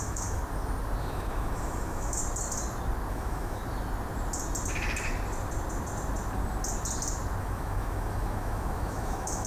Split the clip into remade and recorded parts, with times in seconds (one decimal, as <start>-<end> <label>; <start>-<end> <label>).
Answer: 0.0-0.4 remade; 0.4-1.0 recorded; 1.0-2.2 remade; 2.2-3.1 recorded; 3.1-3.6 remade; 3.6-7.4 recorded; 7.4-9.5 remade